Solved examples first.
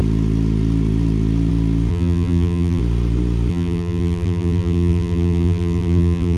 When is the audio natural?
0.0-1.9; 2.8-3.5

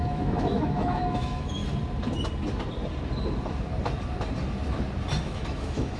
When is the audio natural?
1.6-5.2

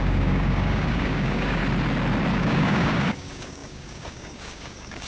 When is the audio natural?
1.6-2.3

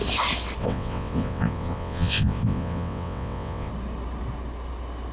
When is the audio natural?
0.0-0.6; 3.7-5.1

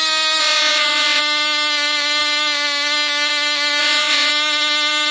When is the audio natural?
0.0-0.4; 1.2-3.8; 4.3-5.1

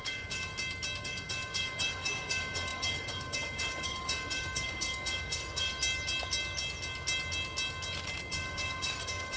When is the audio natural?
0.5-1.0; 5.7-8.3

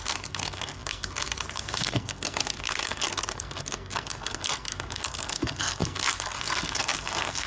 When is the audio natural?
none

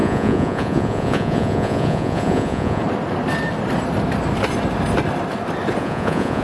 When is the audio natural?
2.8-5.8